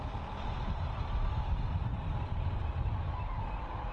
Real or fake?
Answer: real